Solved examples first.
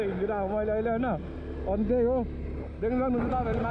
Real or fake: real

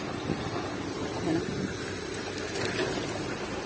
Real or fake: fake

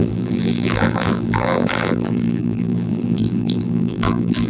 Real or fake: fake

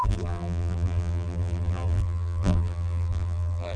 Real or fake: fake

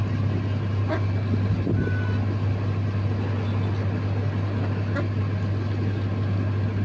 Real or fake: real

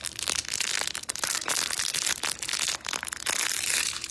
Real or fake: real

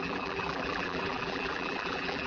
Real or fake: fake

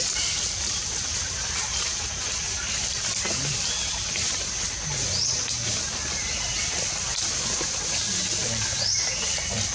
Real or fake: real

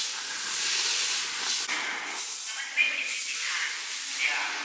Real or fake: real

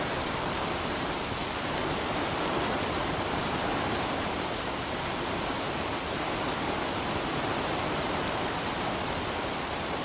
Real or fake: fake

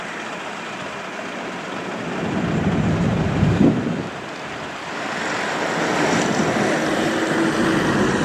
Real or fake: fake